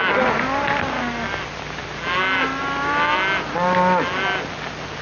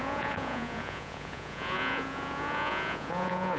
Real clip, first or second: first